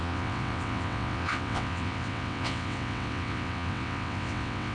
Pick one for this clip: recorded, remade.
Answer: remade